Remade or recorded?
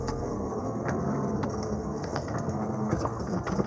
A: remade